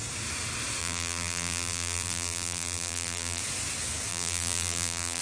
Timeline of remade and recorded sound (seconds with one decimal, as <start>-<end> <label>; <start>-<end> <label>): 0.0-0.8 recorded; 0.8-3.4 remade; 3.4-4.1 recorded; 4.1-5.2 remade

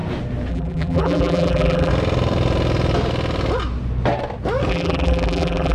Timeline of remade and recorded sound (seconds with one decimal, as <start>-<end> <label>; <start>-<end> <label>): 0.0-0.5 recorded; 0.5-1.9 remade; 1.9-4.7 recorded; 4.7-5.7 remade

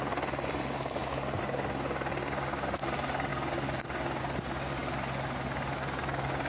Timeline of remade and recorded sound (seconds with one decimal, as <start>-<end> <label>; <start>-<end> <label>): 0.0-6.5 recorded

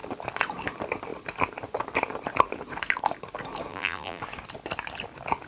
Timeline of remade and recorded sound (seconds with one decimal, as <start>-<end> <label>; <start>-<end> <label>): 0.0-3.7 recorded; 3.7-4.2 remade; 4.2-5.5 recorded

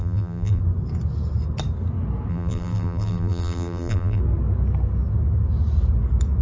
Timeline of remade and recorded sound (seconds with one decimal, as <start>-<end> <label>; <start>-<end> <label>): 0.0-0.6 remade; 0.6-2.3 recorded; 2.3-4.2 remade; 4.2-6.4 recorded

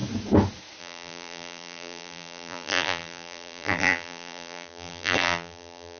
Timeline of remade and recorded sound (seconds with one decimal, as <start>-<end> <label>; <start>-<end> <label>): 0.0-0.8 recorded; 0.8-6.0 remade

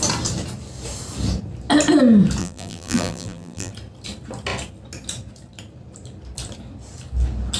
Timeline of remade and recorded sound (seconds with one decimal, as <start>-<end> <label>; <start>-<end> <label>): 0.0-2.4 recorded; 2.4-3.7 remade; 3.7-7.6 recorded